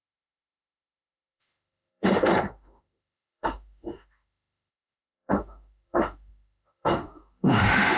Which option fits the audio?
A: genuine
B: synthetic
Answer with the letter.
B